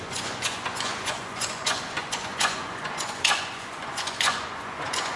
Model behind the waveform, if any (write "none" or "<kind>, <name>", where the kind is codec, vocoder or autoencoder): vocoder, Vocos